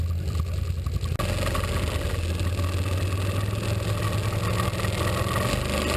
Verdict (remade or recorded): recorded